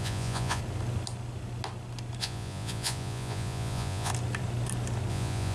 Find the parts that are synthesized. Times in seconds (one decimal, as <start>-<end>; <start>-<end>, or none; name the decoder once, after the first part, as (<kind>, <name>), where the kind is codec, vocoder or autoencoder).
0.0-0.6 (vocoder, Vocos); 2.2-4.1; 5.1-5.5